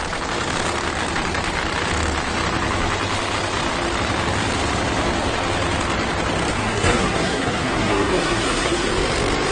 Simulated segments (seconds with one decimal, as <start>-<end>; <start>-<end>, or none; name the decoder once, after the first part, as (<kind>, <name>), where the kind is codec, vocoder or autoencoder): 6.5-8.9 (codec, SNAC)